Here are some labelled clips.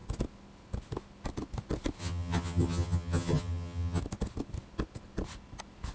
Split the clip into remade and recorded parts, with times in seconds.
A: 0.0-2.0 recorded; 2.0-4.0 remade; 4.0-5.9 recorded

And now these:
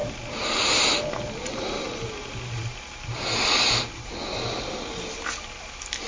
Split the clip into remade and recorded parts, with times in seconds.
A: 0.0-6.1 recorded

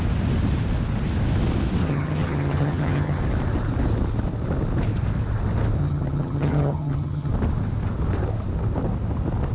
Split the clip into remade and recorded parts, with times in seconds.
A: 0.0-1.8 recorded; 1.8-3.2 remade; 3.2-5.8 recorded; 5.8-7.3 remade; 7.3-9.5 recorded